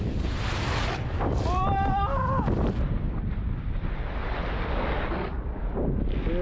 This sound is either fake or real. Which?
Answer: real